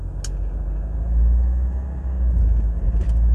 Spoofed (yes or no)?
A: no